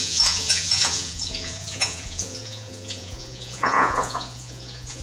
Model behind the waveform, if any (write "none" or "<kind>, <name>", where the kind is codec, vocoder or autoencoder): vocoder, Vocos